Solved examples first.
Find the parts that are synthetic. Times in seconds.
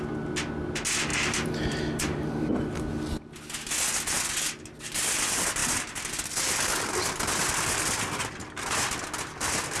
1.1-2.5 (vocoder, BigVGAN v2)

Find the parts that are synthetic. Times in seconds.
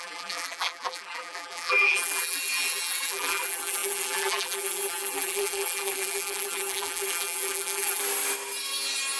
0.0-8.0 (vocoder, BigVGAN v2)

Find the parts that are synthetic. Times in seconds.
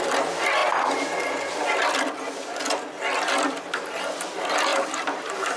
4.7-5.6 (vocoder, BigVGAN v2)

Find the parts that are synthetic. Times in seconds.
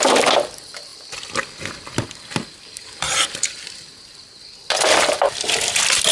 none